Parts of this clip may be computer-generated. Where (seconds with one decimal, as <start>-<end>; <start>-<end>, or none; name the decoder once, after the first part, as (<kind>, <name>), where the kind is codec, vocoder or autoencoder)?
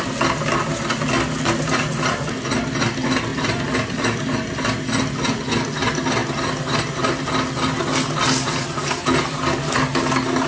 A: none